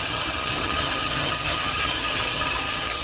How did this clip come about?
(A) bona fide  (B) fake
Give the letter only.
B